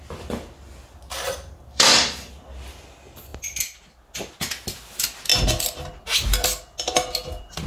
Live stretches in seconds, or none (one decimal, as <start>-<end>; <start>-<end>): 0.0-1.7; 2.3-7.7